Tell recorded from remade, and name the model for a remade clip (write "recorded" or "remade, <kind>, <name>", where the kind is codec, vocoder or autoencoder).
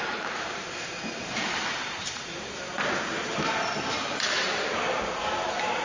remade, vocoder, BigVGAN v2